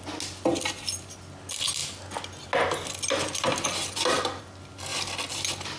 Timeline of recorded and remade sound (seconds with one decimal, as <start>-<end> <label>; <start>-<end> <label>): 0.0-5.8 recorded